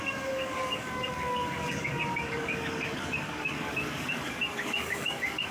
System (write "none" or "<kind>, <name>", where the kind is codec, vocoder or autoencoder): codec, DAC